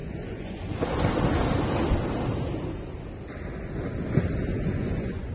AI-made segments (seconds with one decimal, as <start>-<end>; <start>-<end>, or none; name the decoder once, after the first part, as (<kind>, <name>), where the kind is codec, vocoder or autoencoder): 0.0-0.7 (vocoder, Vocos); 4.5-5.3